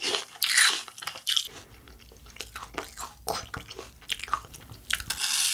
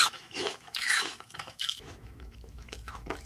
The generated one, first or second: second